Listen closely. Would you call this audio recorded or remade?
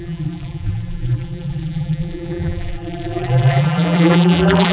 remade